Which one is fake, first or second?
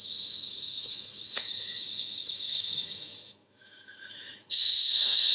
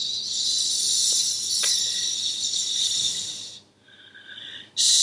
first